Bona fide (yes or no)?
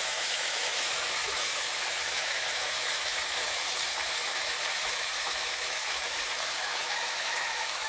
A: no